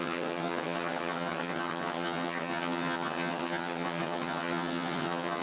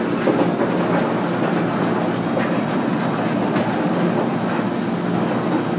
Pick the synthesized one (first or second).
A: first